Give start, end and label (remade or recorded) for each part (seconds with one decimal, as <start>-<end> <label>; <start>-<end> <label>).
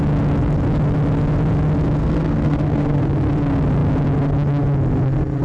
0.0-2.0 recorded; 2.0-3.0 remade; 3.0-5.4 recorded